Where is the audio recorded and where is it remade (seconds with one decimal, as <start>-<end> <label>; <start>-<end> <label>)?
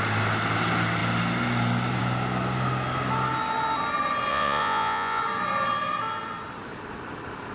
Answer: 0.0-4.3 recorded; 4.3-5.2 remade; 5.2-7.5 recorded